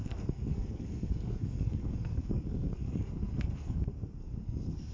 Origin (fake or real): fake